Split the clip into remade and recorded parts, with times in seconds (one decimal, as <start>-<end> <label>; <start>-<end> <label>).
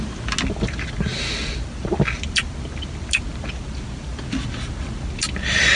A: 0.0-5.8 recorded